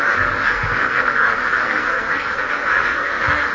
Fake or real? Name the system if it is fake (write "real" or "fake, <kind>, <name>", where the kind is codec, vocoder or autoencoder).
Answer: fake, codec, SNAC